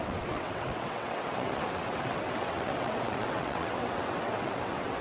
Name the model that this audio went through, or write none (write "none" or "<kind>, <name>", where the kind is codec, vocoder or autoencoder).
vocoder, WaveNeXt